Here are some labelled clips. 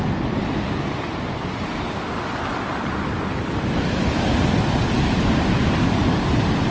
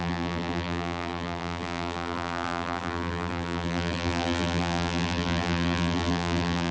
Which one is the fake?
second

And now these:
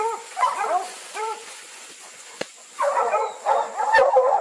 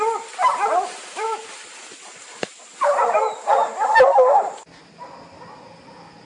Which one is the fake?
first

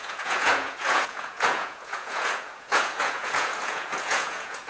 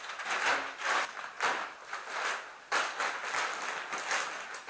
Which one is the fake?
first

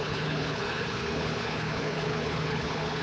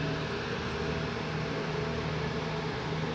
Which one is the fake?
first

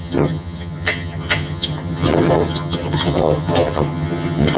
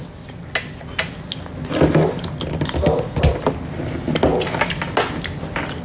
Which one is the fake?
first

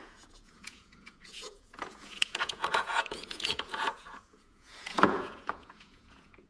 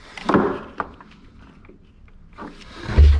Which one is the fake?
first